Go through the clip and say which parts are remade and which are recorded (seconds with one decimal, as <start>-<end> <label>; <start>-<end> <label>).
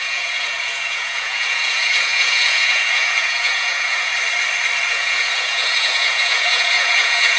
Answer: 0.0-4.1 remade; 4.1-4.9 recorded; 4.9-7.4 remade